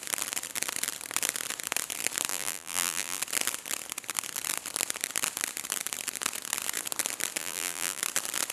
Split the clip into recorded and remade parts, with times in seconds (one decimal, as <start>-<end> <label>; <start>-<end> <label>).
0.0-2.3 recorded; 2.3-3.2 remade; 3.2-7.4 recorded; 7.4-8.0 remade; 8.0-8.5 recorded